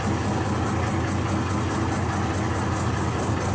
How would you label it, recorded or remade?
recorded